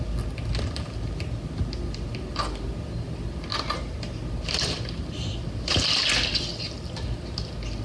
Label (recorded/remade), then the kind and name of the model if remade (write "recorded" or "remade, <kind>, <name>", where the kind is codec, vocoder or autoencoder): recorded